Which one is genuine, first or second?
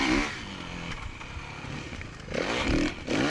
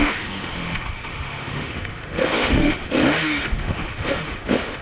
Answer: first